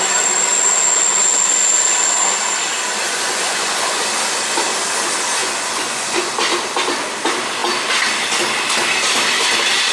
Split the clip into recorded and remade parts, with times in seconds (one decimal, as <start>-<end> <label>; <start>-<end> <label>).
0.0-3.0 recorded; 3.0-4.0 remade; 4.0-5.4 recorded; 5.4-6.3 remade; 6.3-9.9 recorded